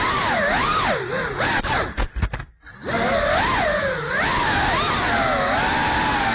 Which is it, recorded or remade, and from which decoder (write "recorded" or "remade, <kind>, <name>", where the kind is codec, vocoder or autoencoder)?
recorded